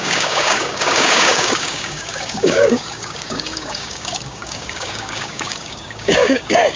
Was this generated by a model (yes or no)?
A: yes